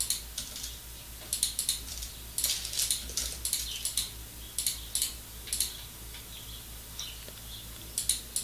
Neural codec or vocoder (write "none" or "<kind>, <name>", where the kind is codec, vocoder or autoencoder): none